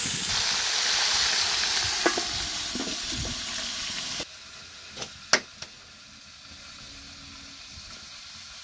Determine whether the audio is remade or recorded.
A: recorded